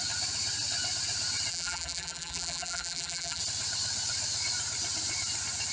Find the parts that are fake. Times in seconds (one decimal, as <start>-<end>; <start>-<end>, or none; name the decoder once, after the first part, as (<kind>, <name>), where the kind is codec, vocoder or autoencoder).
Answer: 1.5-3.4 (vocoder, BigVGAN v2)